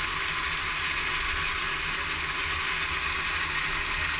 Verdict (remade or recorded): recorded